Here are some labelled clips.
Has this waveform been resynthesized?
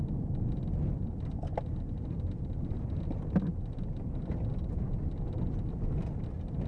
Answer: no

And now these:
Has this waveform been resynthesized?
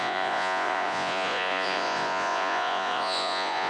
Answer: yes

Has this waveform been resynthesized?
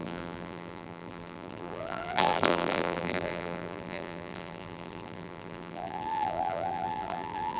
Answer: yes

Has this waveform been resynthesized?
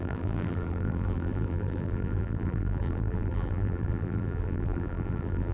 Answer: yes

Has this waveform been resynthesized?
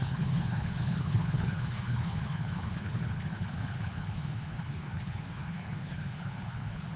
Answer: yes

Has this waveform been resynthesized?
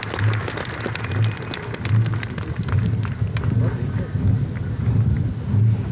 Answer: no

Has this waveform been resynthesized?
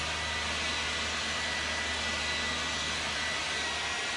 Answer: no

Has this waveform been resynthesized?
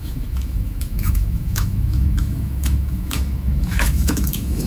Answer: yes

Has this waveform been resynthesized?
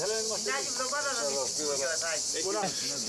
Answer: no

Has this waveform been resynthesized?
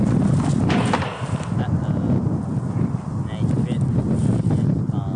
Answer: no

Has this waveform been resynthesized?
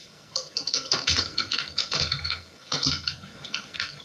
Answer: yes